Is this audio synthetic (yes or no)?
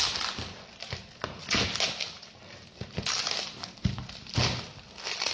no